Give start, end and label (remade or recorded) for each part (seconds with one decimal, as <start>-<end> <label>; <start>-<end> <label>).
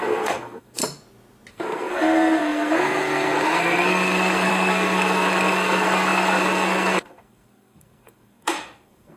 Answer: 0.0-0.8 remade; 0.8-1.5 recorded; 1.5-9.2 remade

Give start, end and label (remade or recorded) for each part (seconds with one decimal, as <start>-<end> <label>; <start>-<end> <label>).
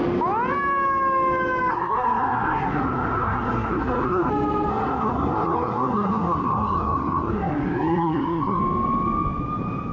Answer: 0.0-1.7 recorded; 1.7-4.3 remade; 4.3-4.7 recorded; 4.7-8.6 remade; 8.6-9.9 recorded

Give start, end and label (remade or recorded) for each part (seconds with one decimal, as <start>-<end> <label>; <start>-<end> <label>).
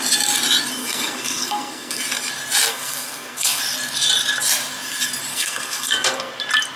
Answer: 0.0-0.8 recorded; 0.8-2.0 remade; 2.0-2.7 recorded; 2.7-3.6 remade; 3.6-5.3 recorded; 5.3-6.3 remade; 6.3-6.8 recorded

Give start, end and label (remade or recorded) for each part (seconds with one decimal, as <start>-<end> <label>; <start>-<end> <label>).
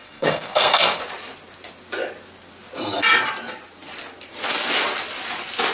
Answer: 0.0-1.0 remade; 1.0-5.7 recorded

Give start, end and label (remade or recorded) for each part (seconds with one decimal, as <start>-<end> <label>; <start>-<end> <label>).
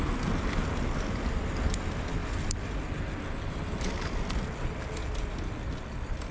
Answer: 0.0-6.3 recorded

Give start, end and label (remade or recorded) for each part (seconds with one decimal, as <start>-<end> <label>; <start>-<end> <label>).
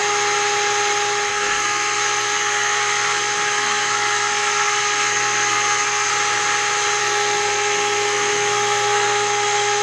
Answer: 0.0-1.3 recorded; 1.3-6.1 remade; 6.1-7.0 recorded; 7.0-9.8 remade